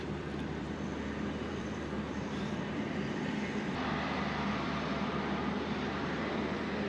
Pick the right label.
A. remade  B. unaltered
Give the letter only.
A